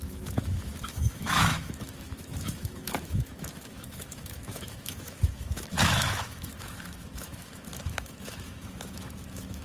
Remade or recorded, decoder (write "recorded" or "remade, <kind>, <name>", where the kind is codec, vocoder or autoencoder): remade, autoencoder, DAC-VAE